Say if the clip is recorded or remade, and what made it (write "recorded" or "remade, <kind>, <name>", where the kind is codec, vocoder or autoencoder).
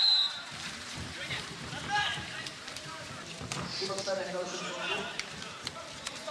remade, vocoder, BigVGAN v2